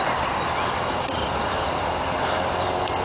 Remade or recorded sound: recorded